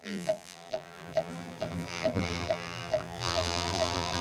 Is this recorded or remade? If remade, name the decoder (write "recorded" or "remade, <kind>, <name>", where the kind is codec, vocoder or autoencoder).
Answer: remade, vocoder, BigVGAN v2